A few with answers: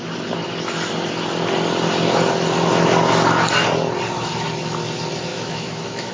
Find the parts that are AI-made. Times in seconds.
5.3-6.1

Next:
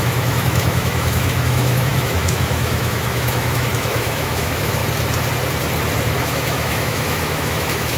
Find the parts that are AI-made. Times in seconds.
0.0-4.8; 6.2-8.0